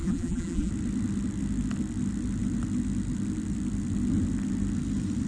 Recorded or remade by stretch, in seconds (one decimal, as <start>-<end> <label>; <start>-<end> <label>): 0.0-0.7 remade; 0.7-5.3 recorded

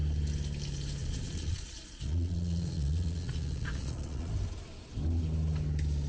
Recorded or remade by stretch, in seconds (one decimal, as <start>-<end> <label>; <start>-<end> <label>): 0.0-1.0 recorded; 1.0-4.3 remade; 4.3-6.1 recorded

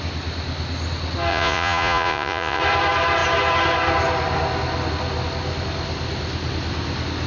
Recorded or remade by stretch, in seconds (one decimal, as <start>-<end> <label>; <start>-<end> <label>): 0.0-1.3 recorded; 1.3-2.6 remade; 2.6-7.3 recorded

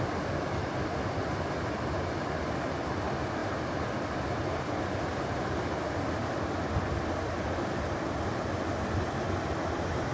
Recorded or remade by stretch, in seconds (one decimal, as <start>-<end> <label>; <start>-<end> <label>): 0.0-10.1 recorded

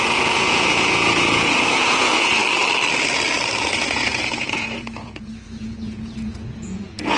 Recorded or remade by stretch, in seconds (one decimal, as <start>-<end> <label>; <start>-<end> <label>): 0.0-2.4 remade; 2.4-3.6 recorded; 3.6-7.2 remade

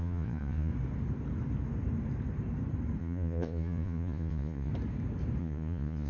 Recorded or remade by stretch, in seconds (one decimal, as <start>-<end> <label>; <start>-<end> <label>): 0.0-0.7 remade; 0.7-3.0 recorded; 3.0-4.7 remade; 4.7-5.4 recorded; 5.4-6.1 remade